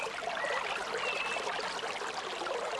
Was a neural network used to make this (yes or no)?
no